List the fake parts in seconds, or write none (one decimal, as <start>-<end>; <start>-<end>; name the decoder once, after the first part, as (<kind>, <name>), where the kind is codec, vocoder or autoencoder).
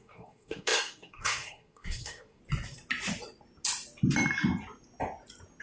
0.0-2.4 (codec, SNAC)